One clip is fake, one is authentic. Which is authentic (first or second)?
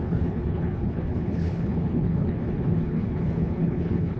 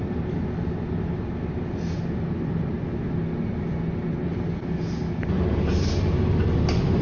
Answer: second